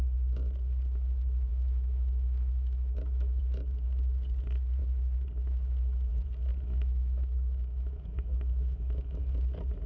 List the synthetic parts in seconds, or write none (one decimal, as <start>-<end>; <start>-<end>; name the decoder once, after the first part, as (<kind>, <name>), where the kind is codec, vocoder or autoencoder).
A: 1.5-3.4 (autoencoder, DAC-VAE); 6.5-9.2